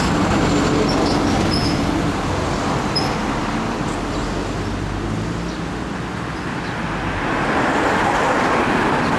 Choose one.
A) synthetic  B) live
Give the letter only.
B